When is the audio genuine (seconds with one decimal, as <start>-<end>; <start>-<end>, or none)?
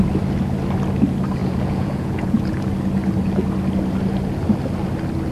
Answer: 0.0-1.4; 2.6-5.3